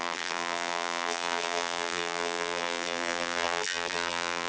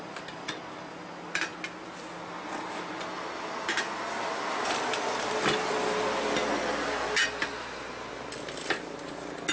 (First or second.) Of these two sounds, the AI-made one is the first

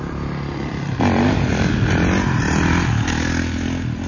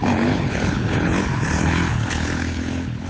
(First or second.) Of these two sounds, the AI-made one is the second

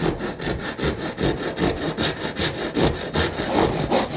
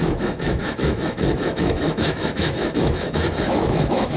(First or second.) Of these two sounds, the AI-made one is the second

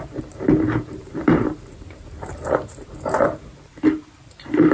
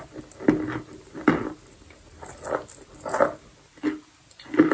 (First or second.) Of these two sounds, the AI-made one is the first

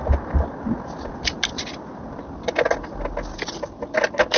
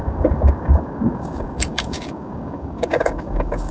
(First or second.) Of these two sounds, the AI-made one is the second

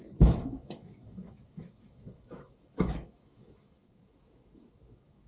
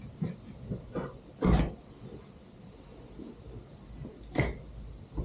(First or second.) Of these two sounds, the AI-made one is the first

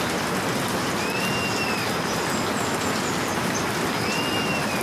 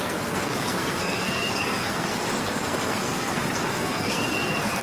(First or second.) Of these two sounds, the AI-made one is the second